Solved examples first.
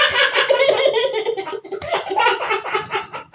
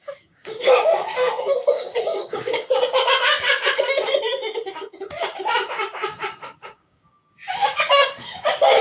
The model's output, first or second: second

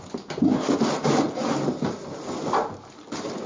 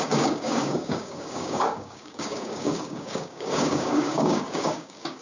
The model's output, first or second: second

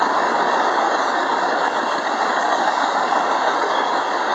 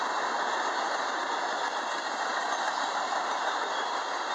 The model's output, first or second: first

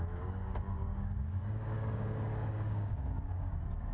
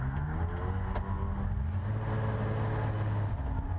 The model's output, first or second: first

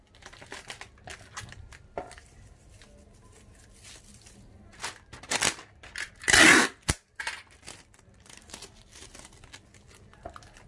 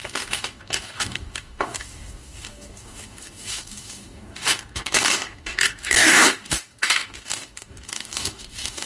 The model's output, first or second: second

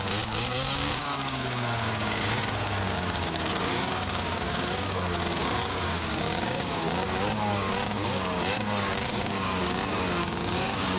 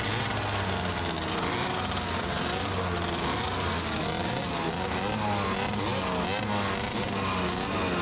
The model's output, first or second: first